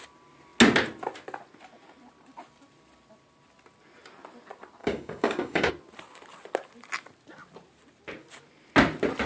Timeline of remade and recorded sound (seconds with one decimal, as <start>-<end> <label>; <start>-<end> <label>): 0.0-4.8 recorded; 4.8-5.7 remade; 5.7-9.3 recorded